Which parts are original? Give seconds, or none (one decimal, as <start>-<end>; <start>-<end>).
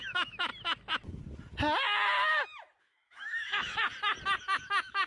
0.5-2.8; 3.8-4.4